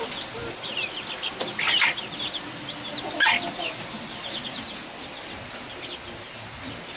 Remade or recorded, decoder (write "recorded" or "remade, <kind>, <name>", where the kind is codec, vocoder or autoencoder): recorded